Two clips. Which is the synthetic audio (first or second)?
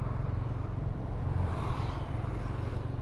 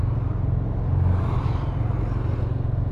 first